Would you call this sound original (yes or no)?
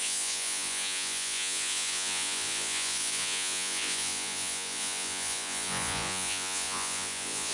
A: no